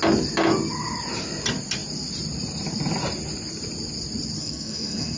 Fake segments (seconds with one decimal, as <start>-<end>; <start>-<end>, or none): 4.4-5.2